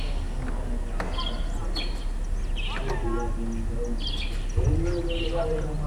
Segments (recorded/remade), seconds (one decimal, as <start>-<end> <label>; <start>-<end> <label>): 0.0-5.9 recorded